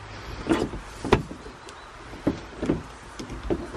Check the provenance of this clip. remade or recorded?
recorded